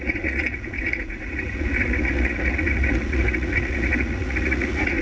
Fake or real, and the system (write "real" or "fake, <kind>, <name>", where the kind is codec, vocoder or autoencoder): fake, vocoder, Vocos